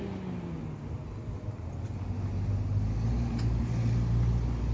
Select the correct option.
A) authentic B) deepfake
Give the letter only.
A